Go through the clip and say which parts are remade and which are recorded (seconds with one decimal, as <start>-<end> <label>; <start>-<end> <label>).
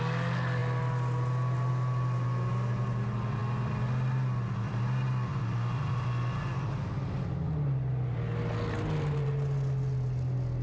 0.0-10.6 recorded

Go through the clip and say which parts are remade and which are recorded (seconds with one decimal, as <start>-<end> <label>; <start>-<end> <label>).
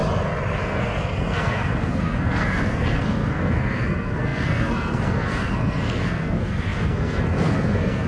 0.0-0.6 recorded; 0.6-8.1 remade